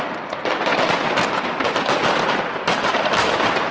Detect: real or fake real